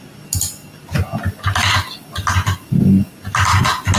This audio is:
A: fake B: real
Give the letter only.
B